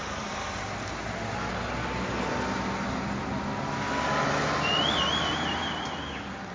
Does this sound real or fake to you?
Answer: real